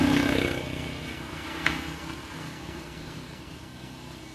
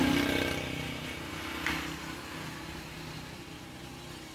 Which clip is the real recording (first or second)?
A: second